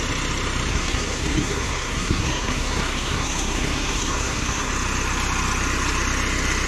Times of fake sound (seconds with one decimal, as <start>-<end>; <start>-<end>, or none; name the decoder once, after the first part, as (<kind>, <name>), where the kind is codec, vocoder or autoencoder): 0.7-4.7 (codec, SNAC)